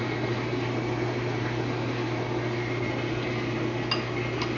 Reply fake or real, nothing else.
real